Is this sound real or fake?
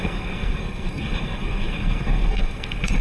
fake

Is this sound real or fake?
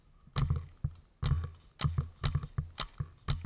real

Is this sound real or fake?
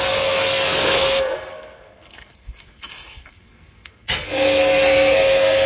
fake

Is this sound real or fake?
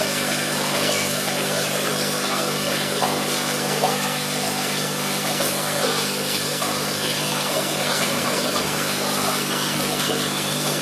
fake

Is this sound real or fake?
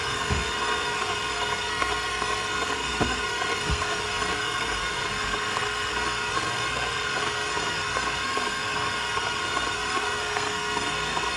fake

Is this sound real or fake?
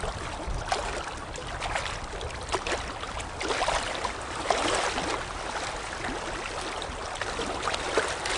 real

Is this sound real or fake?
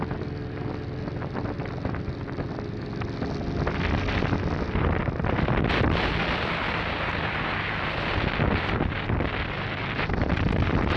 real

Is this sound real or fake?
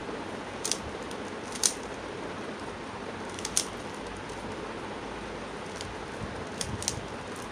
real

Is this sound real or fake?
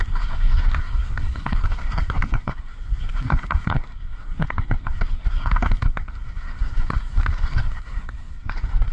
fake